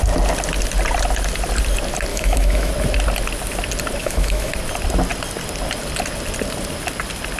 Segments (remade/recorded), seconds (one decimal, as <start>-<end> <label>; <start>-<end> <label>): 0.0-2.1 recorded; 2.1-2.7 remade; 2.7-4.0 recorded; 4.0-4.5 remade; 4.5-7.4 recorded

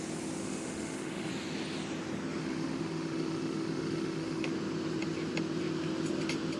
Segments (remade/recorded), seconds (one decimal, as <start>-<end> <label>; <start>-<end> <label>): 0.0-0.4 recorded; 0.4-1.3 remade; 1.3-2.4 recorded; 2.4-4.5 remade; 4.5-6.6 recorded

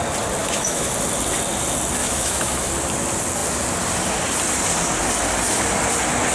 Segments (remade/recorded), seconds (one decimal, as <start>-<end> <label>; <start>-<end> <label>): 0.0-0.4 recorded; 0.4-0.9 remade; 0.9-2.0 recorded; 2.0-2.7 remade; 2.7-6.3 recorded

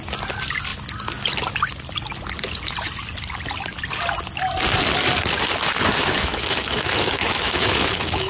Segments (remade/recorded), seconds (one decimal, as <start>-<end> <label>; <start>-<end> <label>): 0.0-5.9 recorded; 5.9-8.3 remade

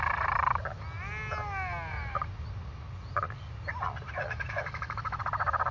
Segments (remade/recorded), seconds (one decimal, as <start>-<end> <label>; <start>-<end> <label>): 0.0-4.2 recorded; 4.2-5.2 remade; 5.2-5.7 recorded